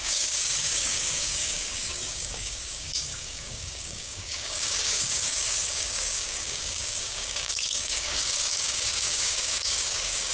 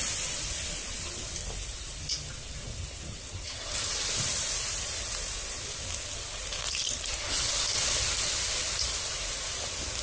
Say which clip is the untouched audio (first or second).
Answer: second